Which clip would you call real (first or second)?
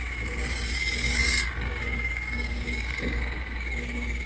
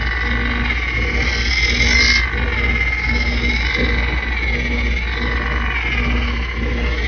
second